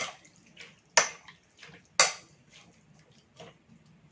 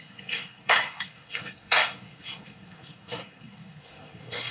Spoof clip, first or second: second